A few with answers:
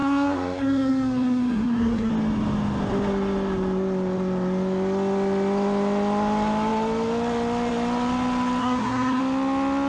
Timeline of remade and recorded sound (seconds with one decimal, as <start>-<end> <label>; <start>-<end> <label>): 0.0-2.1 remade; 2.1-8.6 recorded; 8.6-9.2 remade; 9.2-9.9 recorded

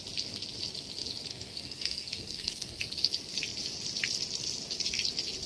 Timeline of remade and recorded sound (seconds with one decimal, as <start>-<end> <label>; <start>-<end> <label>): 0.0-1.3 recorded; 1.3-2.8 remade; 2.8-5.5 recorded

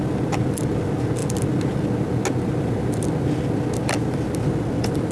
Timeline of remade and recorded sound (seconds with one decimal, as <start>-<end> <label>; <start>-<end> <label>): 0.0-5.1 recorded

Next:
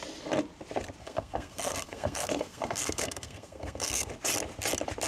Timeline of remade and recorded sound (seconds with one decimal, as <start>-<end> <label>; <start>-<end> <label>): 0.0-1.0 recorded; 1.0-4.1 remade; 4.1-5.1 recorded

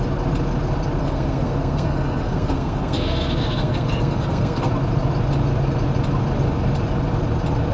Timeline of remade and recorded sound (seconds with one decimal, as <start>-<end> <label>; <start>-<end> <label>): 0.0-1.0 recorded; 1.0-4.7 remade; 4.7-7.7 recorded

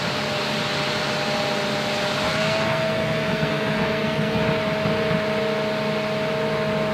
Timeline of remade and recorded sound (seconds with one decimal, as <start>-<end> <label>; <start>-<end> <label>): 0.0-2.3 recorded; 2.3-4.4 remade; 4.4-6.9 recorded

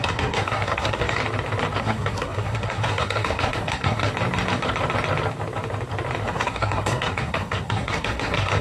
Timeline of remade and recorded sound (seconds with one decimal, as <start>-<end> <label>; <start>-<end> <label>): 0.0-1.2 remade; 1.2-1.8 recorded; 1.8-4.1 remade; 4.1-6.3 recorded; 6.3-8.6 remade

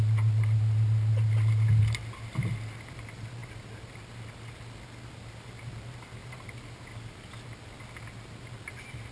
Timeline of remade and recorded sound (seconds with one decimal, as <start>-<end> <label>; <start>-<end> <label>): 0.0-9.1 recorded